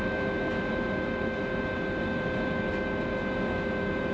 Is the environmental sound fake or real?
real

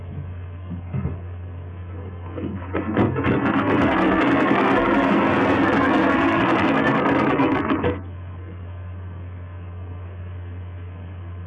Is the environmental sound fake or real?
fake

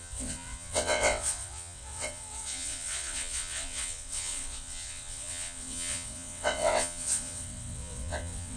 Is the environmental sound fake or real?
fake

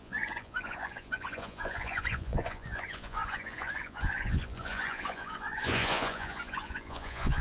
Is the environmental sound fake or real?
fake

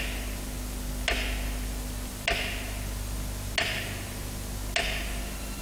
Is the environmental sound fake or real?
real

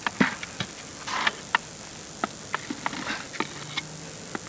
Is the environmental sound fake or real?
real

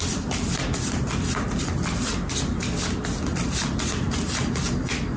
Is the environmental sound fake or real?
real